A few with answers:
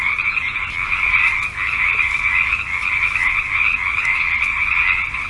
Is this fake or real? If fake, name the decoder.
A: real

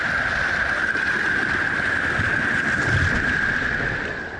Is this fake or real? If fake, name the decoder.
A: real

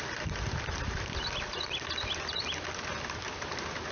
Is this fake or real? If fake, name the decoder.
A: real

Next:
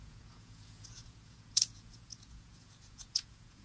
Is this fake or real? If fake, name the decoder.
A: fake, vocoder, Vocos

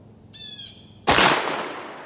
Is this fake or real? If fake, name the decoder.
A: real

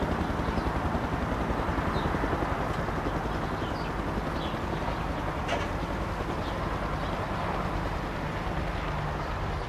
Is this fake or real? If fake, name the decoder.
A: real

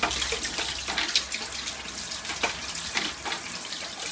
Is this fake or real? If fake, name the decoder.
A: real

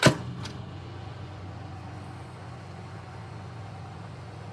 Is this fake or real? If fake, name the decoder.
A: fake, vocoder, Vocos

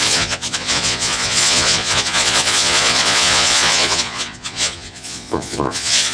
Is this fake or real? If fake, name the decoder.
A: fake, vocoder, Vocos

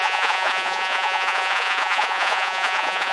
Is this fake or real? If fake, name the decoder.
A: fake, vocoder, Vocos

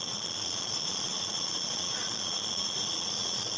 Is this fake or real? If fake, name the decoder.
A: fake, vocoder, Vocos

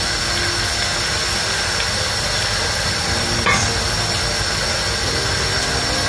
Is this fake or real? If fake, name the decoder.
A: real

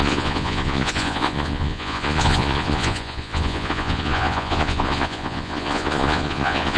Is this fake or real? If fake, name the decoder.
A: fake, vocoder, Vocos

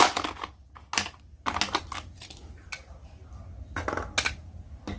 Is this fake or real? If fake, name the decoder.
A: real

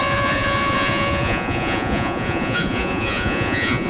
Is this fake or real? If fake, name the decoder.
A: fake, vocoder, Vocos